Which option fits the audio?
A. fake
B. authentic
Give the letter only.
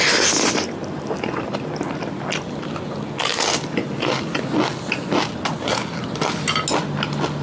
B